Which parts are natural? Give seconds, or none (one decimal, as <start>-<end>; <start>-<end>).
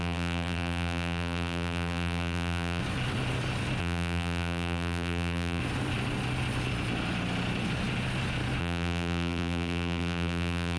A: 2.8-3.8; 5.6-8.6